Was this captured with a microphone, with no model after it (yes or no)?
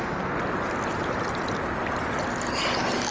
yes